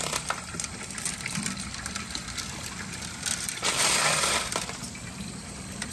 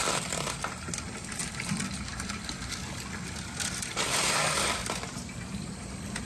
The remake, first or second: first